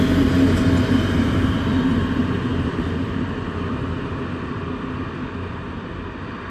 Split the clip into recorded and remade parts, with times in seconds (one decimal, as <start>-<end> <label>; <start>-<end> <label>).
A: 0.0-2.5 recorded; 2.5-3.5 remade; 3.5-6.5 recorded